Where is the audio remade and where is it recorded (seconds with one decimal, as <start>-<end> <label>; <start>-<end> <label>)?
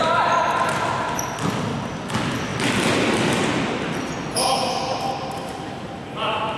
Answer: 0.0-6.6 recorded